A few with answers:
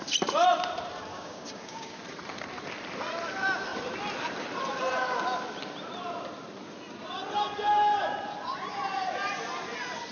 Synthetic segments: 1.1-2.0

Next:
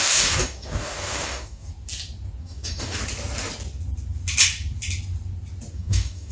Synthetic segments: 0.0-1.7; 2.4-3.0; 5.7-6.3